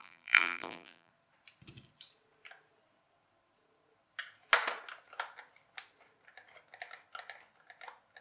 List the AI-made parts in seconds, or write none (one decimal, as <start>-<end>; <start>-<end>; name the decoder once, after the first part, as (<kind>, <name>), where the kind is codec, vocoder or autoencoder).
0.0-1.1 (vocoder, BigVGAN v2)